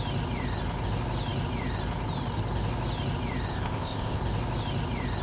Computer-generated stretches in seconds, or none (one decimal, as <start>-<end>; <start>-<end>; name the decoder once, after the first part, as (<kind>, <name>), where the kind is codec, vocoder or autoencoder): 3.5-4.2 (codec, ZipCodec)